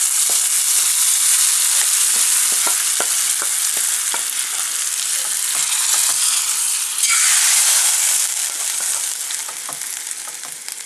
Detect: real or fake real